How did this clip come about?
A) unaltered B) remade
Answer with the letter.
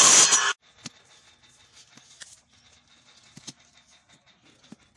A